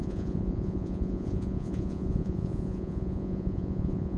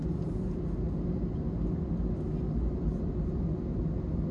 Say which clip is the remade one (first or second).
first